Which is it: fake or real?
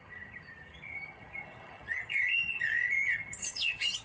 fake